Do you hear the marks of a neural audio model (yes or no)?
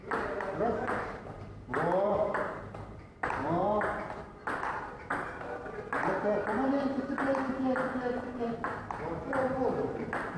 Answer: yes